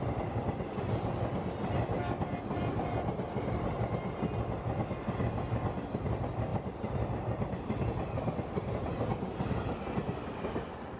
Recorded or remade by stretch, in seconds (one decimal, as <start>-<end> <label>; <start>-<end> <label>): 0.0-11.0 recorded